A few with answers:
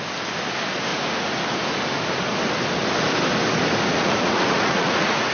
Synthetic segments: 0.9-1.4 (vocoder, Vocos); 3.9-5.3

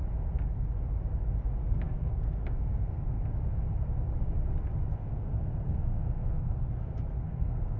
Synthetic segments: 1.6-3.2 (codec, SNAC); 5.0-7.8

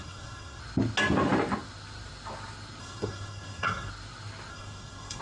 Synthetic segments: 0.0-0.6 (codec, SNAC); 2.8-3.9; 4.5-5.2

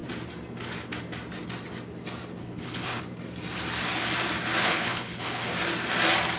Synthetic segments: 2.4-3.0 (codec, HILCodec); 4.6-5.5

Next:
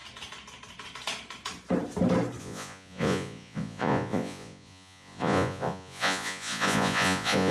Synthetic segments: 2.4-7.5 (vocoder, Vocos)